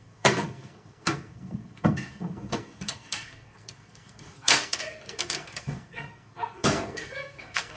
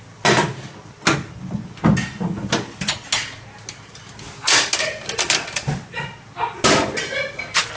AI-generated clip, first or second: first